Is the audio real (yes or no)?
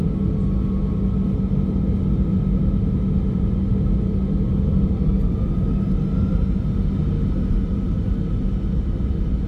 yes